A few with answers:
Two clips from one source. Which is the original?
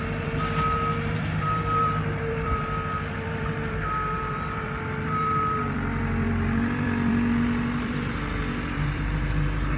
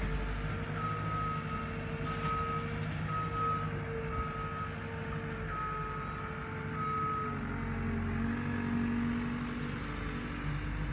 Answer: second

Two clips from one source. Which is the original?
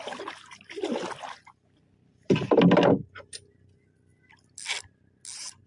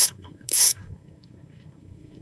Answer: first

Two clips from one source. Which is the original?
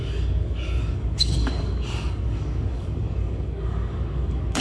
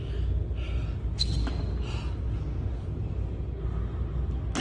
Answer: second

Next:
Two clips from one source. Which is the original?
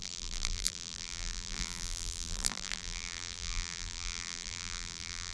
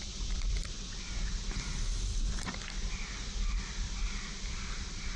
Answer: second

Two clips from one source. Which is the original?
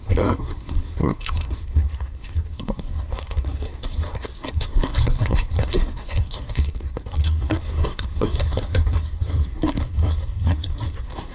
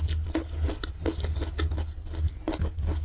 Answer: second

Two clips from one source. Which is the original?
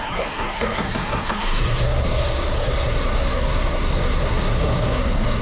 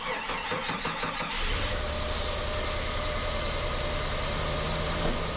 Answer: second